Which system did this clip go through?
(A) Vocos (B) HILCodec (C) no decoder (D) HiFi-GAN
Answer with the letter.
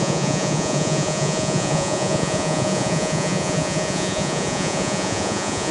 A